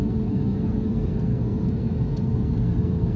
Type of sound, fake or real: fake